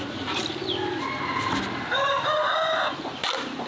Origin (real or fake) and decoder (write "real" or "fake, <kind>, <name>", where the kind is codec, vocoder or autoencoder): real